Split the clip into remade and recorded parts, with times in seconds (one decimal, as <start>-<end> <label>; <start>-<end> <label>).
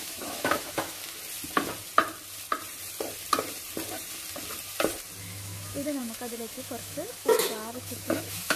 0.0-1.0 remade; 1.0-5.2 recorded; 5.2-8.6 remade